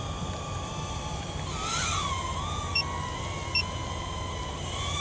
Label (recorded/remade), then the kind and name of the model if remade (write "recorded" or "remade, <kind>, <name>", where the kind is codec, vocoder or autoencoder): remade, vocoder, BigVGAN v2